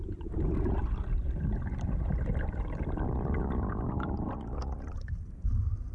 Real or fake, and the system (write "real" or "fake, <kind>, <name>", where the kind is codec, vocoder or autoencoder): real